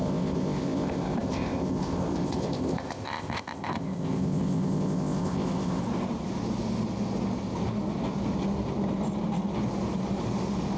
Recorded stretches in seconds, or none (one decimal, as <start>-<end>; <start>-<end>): 5.8-10.8